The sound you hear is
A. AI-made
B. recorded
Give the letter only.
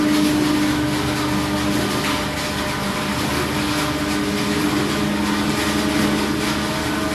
B